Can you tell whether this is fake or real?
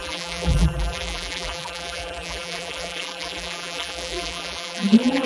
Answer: fake